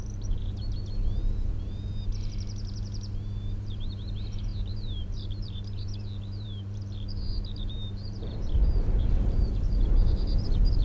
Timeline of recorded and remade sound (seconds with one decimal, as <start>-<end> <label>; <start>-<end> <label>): 0.0-0.6 remade; 0.6-1.4 recorded; 1.4-10.8 remade

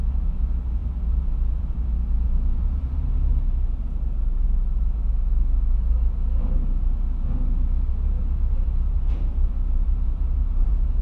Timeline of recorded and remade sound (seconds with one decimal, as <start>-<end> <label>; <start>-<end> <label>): 0.0-3.3 remade; 3.3-7.9 recorded; 7.9-11.0 remade

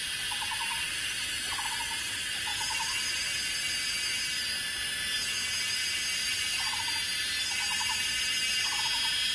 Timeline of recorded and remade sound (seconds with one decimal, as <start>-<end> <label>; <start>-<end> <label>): 0.0-6.2 recorded; 6.2-6.9 remade; 6.9-9.3 recorded

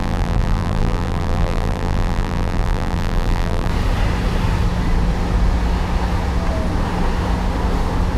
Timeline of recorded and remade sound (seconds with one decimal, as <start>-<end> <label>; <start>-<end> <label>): 0.0-3.7 remade; 3.7-8.2 recorded

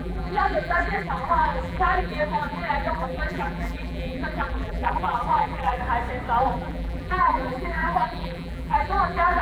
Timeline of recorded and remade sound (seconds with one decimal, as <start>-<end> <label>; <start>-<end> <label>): 0.0-5.8 remade; 5.8-6.4 recorded; 6.4-9.4 remade

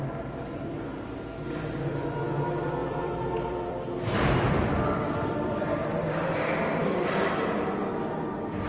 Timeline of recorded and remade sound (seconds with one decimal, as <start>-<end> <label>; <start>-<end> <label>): 0.0-2.8 recorded; 2.8-7.1 remade; 7.1-8.7 recorded

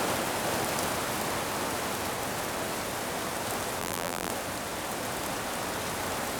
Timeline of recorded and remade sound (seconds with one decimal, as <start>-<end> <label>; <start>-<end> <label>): 0.0-3.8 recorded; 3.8-4.3 remade; 4.3-6.4 recorded